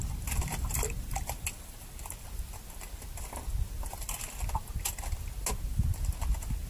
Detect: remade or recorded recorded